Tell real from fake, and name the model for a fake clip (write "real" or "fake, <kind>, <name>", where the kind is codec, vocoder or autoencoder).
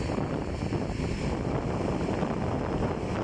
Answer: real